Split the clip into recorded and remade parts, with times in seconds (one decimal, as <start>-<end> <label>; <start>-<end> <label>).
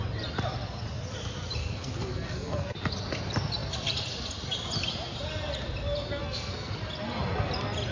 0.0-1.6 recorded; 1.6-2.9 remade; 2.9-6.2 recorded; 6.2-6.7 remade; 6.7-7.9 recorded